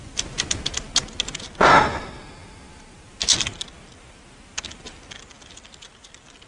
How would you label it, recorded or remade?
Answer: recorded